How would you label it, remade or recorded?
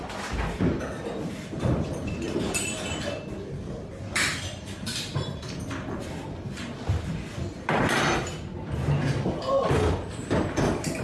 remade